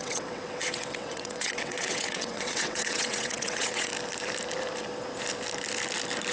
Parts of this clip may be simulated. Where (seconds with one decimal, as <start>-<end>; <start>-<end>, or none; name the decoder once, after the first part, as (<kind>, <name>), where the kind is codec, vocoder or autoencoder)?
0.0-3.9 (vocoder, WaveNeXt)